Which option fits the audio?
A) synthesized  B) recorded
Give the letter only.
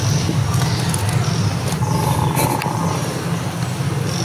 B